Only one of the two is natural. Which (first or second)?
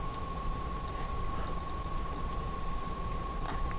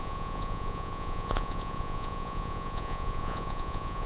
first